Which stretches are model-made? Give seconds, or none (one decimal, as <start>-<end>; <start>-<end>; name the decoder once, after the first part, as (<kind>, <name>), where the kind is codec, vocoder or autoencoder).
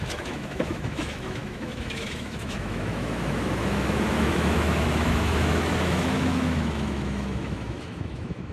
0.0-8.5 (autoencoder, DAC-VAE)